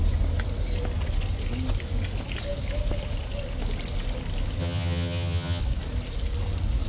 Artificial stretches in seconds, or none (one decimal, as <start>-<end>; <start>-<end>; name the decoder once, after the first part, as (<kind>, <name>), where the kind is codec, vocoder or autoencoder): 4.6-5.6 (vocoder, HiFi-GAN)